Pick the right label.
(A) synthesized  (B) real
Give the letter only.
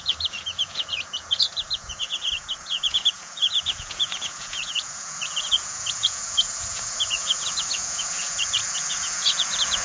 A